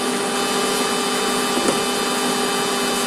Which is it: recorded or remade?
recorded